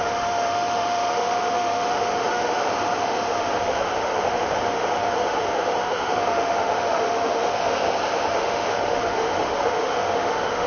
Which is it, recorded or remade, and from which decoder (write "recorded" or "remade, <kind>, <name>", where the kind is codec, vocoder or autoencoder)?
remade, autoencoder, DAC-VAE